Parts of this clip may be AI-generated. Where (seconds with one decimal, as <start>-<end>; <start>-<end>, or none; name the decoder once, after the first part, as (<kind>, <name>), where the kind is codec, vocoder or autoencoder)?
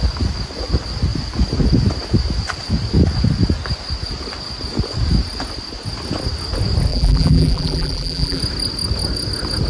6.9-8.4 (vocoder, BigVGAN v2)